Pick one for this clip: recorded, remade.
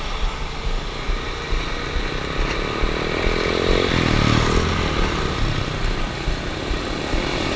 recorded